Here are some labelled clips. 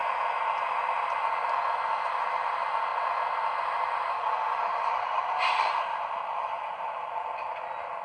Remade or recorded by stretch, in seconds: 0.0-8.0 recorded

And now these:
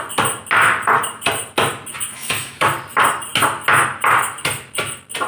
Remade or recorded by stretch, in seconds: 0.0-2.1 recorded; 2.1-2.6 remade; 2.6-5.3 recorded

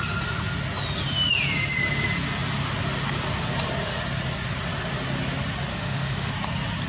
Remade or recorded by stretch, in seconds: 0.0-5.7 recorded; 5.7-6.3 remade; 6.3-6.9 recorded

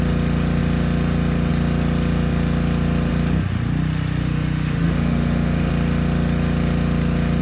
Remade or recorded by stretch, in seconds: 0.0-4.2 recorded; 4.2-5.7 remade; 5.7-7.4 recorded

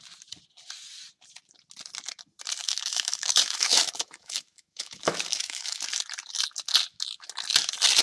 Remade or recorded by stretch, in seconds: 0.0-2.6 recorded; 2.6-5.8 remade; 5.8-8.0 recorded

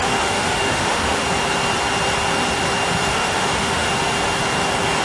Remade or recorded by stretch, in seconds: 0.0-1.2 remade; 1.2-3.1 recorded; 3.1-3.9 remade; 3.9-5.0 recorded